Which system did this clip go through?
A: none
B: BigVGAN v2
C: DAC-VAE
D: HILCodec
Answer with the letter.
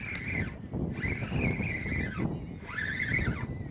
A